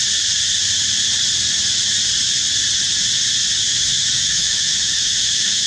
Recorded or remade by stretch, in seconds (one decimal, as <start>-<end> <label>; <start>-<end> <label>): 0.0-3.7 recorded; 3.7-5.7 remade